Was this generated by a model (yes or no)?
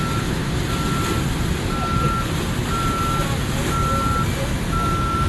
no